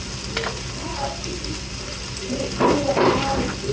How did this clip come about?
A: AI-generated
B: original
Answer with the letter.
B